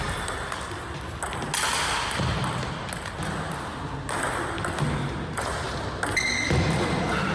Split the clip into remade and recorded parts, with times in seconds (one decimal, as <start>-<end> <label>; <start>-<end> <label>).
0.0-7.3 recorded